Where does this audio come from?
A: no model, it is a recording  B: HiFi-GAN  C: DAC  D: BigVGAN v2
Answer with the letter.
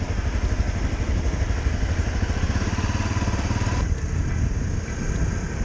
A